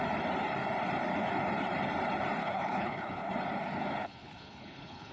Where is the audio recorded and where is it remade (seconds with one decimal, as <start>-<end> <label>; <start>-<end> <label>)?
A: 0.0-2.4 recorded; 2.4-3.3 remade; 3.3-4.0 recorded; 4.0-5.1 remade